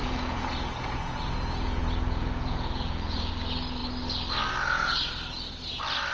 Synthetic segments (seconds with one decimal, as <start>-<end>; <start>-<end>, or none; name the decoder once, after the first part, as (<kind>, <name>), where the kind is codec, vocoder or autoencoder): 0.0-3.3 (vocoder, Vocos)

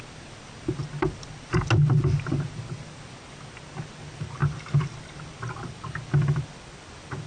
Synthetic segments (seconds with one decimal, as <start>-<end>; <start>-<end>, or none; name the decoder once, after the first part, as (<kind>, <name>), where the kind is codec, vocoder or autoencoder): none

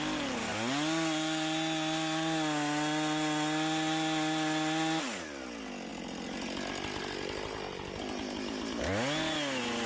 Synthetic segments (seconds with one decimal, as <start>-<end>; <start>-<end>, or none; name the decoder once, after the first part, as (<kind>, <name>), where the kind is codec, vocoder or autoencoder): none

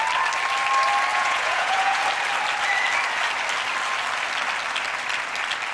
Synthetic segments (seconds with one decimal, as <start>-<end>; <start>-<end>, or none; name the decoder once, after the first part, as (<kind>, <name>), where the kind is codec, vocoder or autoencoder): 1.1-2.0 (vocoder, Vocos)